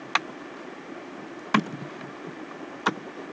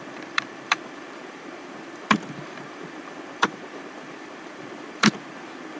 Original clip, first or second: first